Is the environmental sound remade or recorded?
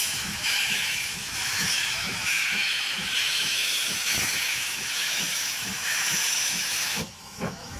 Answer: remade